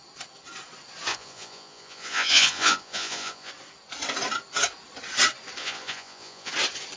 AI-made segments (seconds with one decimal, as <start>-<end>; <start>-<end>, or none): 1.1-3.5; 5.6-6.5